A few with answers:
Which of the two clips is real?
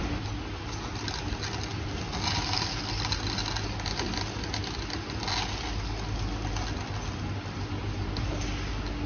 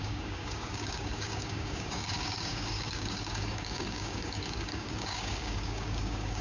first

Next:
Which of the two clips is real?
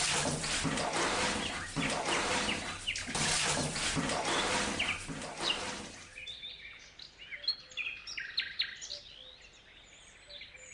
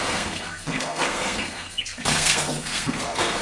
first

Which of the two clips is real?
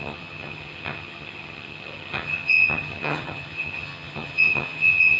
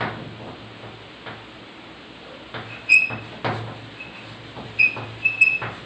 second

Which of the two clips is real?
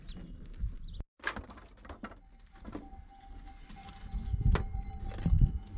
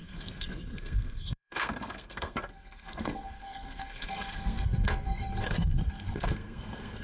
first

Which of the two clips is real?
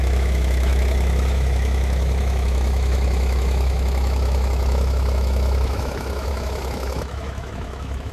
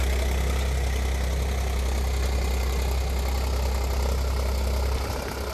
second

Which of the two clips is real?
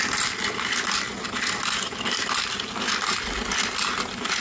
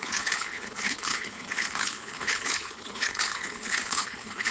first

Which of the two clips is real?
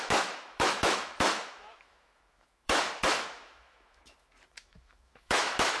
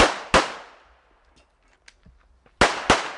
second